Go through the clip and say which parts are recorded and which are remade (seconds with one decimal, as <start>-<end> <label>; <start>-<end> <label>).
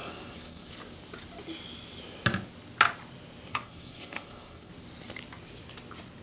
0.0-0.7 remade; 0.7-3.5 recorded; 3.5-4.7 remade; 4.7-6.2 recorded